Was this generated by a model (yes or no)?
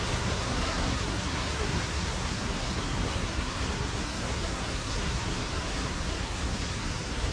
yes